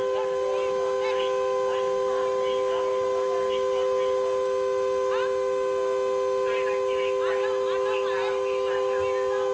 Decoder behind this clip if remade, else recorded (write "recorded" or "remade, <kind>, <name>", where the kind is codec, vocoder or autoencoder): recorded